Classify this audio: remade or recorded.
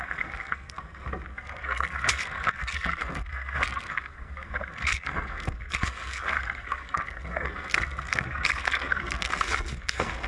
remade